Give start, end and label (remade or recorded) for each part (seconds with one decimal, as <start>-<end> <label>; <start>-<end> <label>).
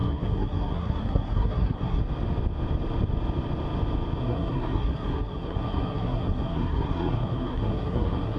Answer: 0.0-2.0 remade; 2.0-4.2 recorded; 4.2-8.4 remade